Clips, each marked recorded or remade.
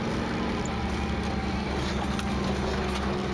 recorded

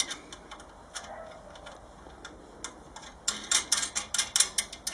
recorded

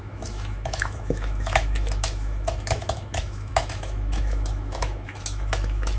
remade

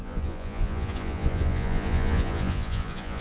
remade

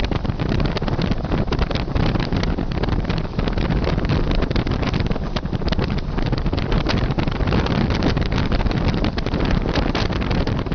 remade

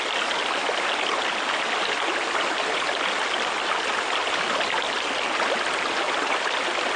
recorded